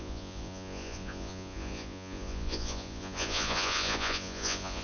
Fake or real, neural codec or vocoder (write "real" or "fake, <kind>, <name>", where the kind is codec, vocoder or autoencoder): fake, vocoder, Vocos